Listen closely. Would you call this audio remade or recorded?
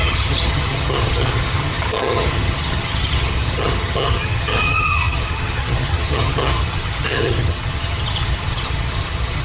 remade